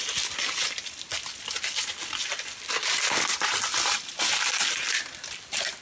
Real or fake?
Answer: real